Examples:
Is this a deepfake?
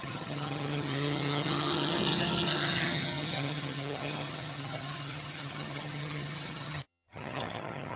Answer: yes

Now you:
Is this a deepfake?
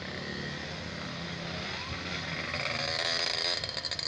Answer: no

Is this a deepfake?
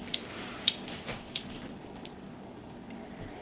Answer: yes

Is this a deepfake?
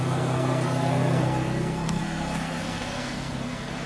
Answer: yes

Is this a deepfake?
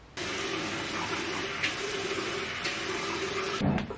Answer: no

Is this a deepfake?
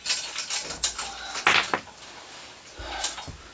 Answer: no